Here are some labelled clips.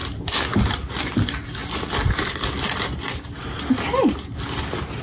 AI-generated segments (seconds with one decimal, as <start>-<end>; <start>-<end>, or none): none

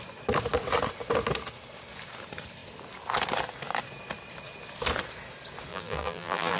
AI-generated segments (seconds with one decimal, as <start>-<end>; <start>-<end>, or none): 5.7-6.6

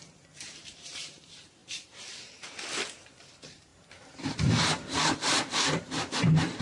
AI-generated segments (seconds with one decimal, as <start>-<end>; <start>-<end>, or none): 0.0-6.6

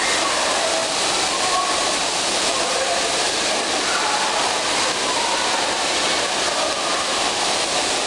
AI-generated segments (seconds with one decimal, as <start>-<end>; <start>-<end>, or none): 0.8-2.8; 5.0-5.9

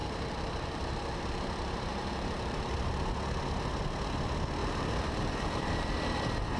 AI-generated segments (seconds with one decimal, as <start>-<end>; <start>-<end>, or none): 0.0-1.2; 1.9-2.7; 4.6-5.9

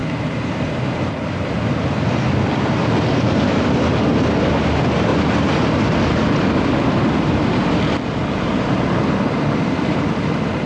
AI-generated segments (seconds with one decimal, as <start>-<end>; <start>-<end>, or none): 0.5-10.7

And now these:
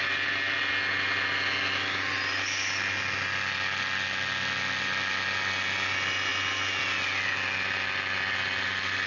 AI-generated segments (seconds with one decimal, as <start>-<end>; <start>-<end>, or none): none